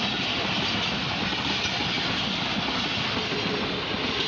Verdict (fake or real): real